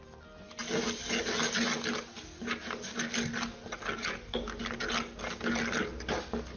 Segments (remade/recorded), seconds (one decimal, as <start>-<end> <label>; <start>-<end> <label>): 0.0-6.6 recorded